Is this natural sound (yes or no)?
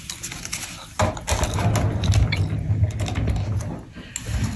yes